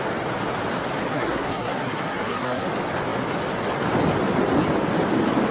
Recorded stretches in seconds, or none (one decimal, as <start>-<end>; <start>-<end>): 0.0-1.1; 2.7-5.5